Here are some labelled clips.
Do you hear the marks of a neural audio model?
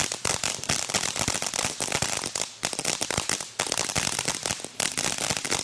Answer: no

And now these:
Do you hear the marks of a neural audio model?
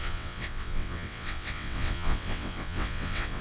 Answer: yes